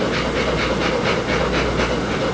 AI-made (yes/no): no